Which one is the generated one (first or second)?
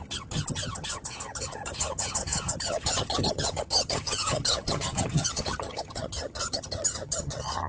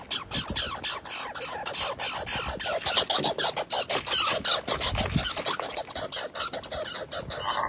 first